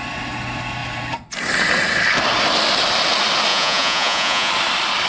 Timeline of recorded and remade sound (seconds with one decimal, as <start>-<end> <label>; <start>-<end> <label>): 0.0-3.5 recorded; 3.5-4.5 remade; 4.5-5.1 recorded